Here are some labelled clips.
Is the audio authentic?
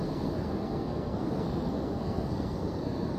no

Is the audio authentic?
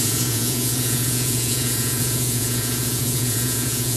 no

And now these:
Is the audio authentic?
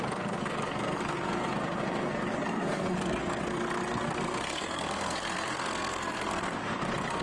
no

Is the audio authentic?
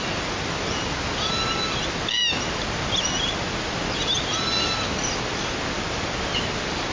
yes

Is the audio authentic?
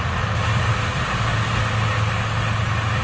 yes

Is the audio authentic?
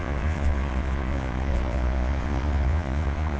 no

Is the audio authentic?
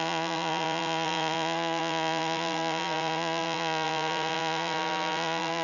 no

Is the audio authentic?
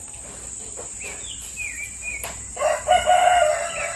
yes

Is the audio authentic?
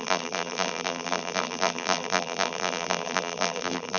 no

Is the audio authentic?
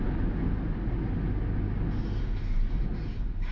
yes